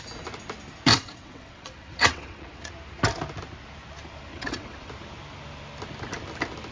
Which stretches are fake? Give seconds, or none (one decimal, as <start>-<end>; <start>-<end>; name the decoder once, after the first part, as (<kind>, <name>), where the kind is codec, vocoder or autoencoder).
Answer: 0.9-2.7 (vocoder, WaveNeXt); 4.3-4.9